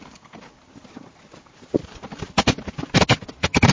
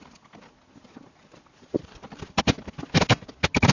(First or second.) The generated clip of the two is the first